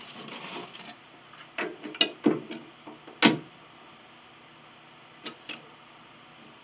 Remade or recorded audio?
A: recorded